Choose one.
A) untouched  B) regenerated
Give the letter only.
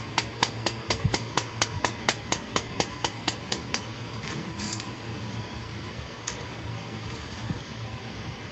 B